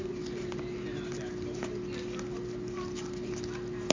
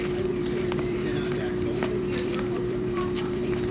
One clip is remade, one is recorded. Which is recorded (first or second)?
first